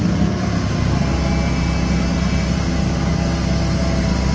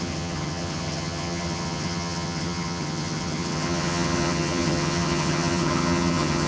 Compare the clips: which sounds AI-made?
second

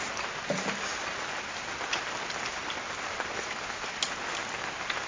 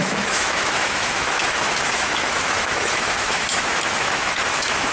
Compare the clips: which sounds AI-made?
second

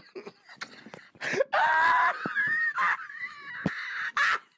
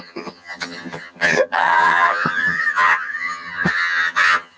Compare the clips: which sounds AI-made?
second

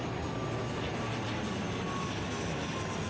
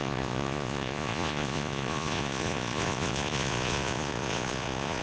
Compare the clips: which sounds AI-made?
second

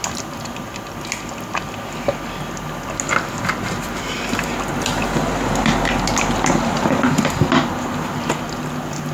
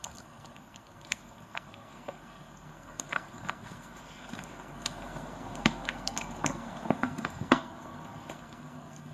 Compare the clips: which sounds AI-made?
second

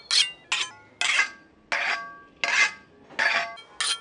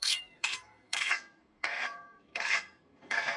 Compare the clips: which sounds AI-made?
second